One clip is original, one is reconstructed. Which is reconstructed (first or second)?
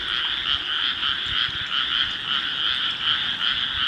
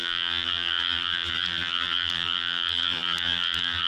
second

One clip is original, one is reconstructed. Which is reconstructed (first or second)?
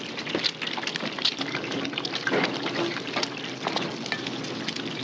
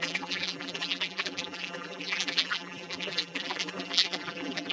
second